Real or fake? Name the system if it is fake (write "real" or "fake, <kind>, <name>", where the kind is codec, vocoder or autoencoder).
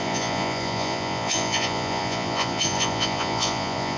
fake, vocoder, Vocos